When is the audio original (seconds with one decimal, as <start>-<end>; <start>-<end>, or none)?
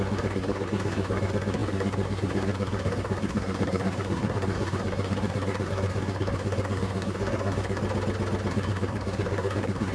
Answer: 7.8-8.5